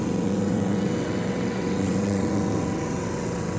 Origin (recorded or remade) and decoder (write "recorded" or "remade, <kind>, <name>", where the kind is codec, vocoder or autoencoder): remade, vocoder, WaveNeXt